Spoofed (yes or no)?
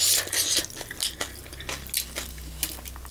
no